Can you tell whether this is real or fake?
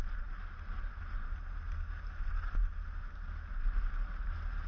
real